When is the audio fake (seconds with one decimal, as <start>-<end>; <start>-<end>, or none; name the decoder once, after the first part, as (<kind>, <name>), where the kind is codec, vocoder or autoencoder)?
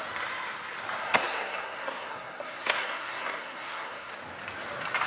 1.0-4.1 (codec, SNAC)